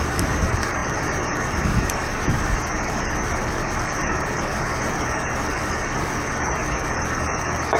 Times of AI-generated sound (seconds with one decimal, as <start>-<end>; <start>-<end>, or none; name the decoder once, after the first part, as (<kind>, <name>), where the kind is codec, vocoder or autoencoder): 0.0-7.8 (codec, DAC)